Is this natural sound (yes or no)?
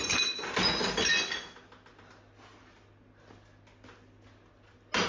yes